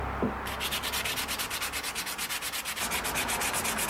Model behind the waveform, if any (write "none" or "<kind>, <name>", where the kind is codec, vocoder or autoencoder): none